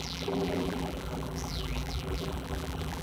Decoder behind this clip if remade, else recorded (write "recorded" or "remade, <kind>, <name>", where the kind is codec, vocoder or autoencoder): remade, vocoder, BigVGAN v2